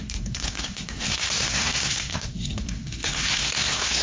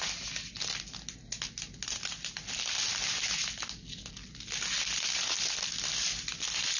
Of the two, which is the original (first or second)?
second